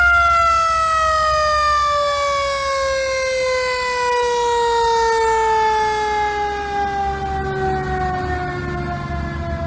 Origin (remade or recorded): recorded